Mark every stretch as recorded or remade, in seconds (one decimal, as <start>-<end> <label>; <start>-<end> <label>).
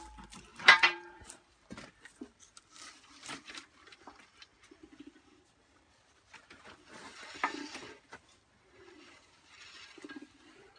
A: 0.0-0.5 recorded; 0.5-1.7 remade; 1.7-10.8 recorded